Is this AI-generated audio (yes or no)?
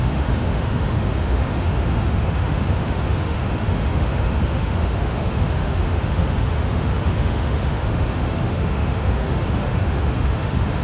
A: yes